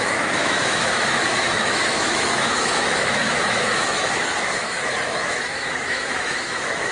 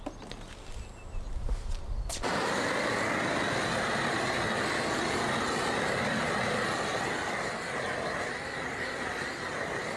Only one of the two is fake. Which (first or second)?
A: first